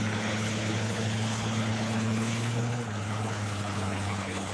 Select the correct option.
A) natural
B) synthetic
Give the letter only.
B